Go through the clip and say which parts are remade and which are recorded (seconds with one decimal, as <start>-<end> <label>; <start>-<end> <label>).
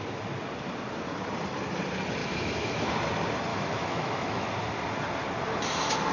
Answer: 0.0-2.2 recorded; 2.2-2.9 remade; 2.9-3.5 recorded; 3.5-4.5 remade; 4.5-6.1 recorded